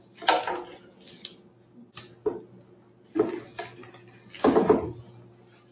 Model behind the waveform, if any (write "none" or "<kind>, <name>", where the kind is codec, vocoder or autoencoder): none